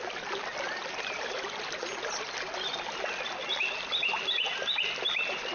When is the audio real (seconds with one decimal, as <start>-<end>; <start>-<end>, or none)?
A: 0.0-5.5